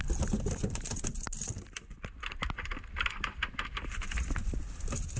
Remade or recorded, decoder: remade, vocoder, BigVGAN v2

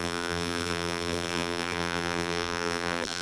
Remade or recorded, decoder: remade, vocoder, BigVGAN v2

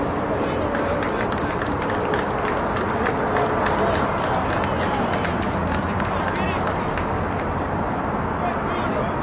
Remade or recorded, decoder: recorded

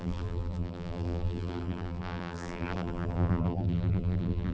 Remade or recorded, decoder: remade, vocoder, BigVGAN v2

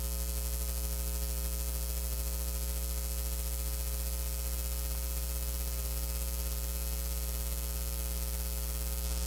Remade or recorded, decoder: recorded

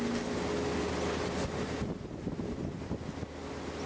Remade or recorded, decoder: recorded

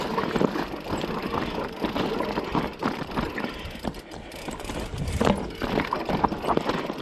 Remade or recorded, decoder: recorded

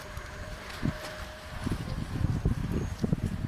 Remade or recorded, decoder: remade, vocoder, BigVGAN v2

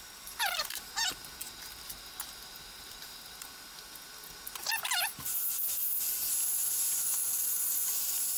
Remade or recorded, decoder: recorded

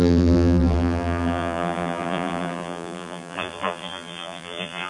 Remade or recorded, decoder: remade, vocoder, BigVGAN v2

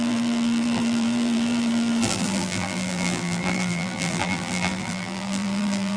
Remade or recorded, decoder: remade, vocoder, BigVGAN v2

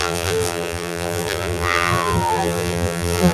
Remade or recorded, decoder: remade, vocoder, BigVGAN v2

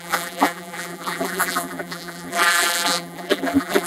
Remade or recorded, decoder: remade, vocoder, BigVGAN v2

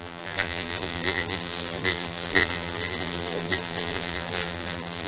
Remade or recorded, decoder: remade, vocoder, BigVGAN v2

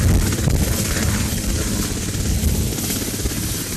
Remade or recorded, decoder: recorded